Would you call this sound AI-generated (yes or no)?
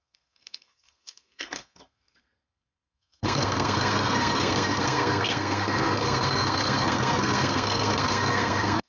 yes